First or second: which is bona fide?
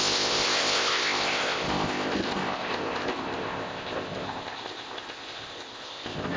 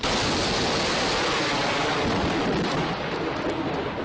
second